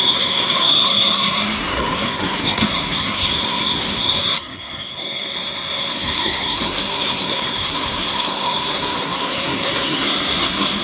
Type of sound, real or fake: fake